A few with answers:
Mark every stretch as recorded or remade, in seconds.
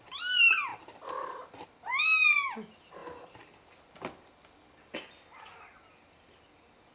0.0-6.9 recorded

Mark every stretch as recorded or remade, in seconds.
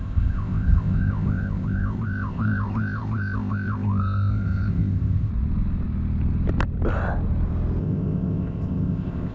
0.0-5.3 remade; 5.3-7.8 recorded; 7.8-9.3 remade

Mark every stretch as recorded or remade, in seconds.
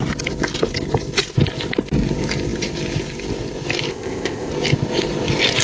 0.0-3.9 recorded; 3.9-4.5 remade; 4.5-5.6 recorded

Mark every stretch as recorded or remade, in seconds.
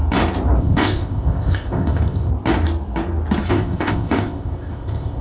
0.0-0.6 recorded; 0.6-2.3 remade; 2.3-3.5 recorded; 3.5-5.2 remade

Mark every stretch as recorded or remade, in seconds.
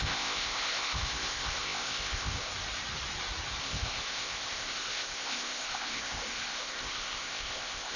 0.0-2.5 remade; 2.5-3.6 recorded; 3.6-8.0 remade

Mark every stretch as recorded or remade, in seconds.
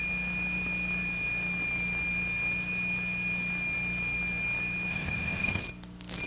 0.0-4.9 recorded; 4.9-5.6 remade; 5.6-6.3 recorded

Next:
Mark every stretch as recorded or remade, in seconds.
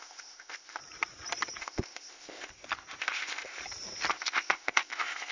0.0-0.8 remade; 0.8-1.6 recorded; 1.6-2.5 remade; 2.5-3.0 recorded; 3.0-3.6 remade; 3.6-4.1 recorded; 4.1-5.3 remade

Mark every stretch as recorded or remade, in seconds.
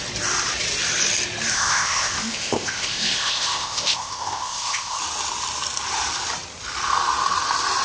0.0-1.5 recorded; 1.5-5.0 remade; 5.0-7.8 recorded